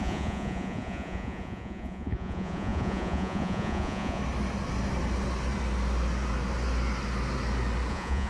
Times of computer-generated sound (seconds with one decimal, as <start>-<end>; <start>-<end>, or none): 0.0-4.2; 7.9-8.3